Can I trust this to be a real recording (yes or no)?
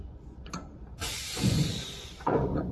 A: no